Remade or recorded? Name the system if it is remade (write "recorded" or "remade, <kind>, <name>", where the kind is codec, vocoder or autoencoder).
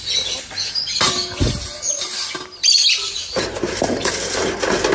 recorded